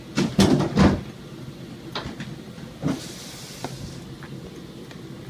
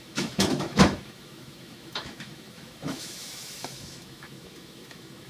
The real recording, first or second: first